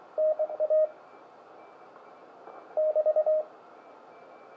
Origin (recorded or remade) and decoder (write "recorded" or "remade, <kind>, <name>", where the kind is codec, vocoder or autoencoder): recorded